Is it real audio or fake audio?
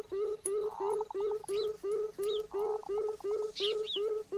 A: real